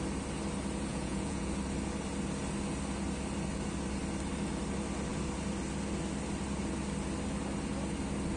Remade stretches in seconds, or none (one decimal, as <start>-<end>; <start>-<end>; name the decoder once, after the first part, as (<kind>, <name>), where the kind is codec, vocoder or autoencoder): 0.9-1.5 (vocoder, Vocos)